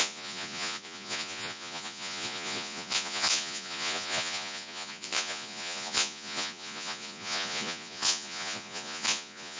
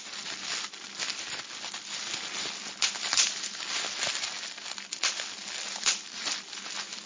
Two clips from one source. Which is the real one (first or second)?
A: second